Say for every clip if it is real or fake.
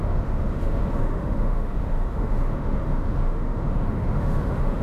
fake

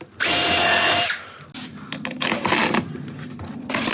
real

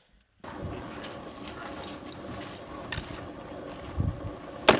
real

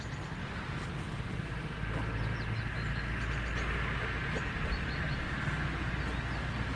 real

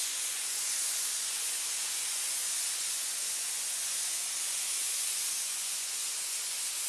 fake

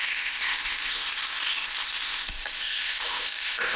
fake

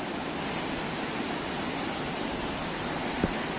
real